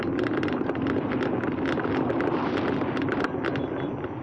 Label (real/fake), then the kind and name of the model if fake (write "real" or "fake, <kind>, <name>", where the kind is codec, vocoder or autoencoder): real